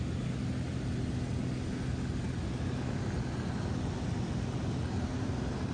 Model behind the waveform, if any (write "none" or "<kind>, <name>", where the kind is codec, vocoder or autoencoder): none